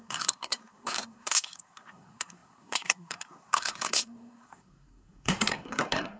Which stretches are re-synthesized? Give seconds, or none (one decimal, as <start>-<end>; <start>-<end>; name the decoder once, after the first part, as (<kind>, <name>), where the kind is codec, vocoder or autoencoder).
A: 0.0-6.2 (codec, SNAC)